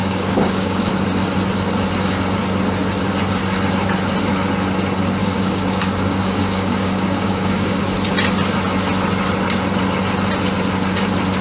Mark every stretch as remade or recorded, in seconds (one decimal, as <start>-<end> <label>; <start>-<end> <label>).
0.0-0.9 remade; 0.9-5.2 recorded; 5.2-7.8 remade; 7.8-11.4 recorded